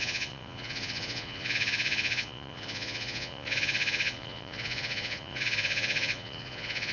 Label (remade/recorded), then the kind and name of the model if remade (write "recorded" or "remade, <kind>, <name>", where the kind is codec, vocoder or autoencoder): remade, vocoder, Vocos